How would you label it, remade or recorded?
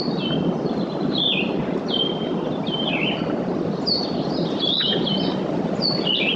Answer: recorded